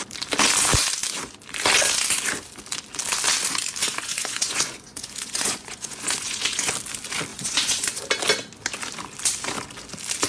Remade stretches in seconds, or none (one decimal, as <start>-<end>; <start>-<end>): 3.8-6.7; 7.3-8.0